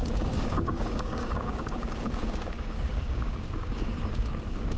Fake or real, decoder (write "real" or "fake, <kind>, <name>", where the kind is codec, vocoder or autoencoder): fake, codec, DAC